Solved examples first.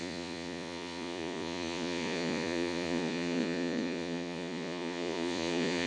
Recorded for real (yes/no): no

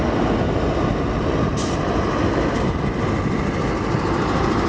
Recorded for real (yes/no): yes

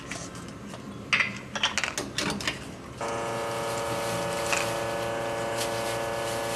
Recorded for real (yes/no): yes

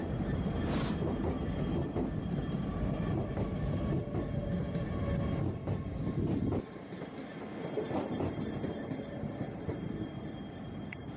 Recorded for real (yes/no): yes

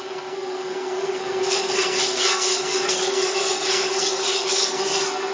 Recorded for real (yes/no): no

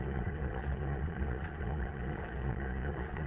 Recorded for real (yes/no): no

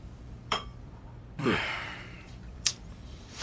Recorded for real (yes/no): no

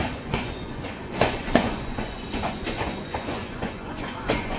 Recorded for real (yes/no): no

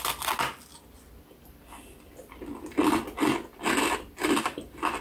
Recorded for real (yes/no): yes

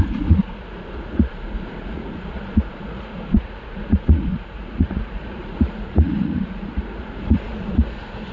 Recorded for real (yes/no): no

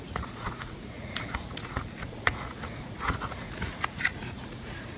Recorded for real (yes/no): no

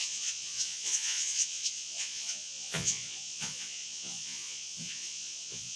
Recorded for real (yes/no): no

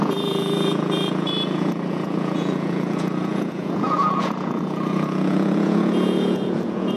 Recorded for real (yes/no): no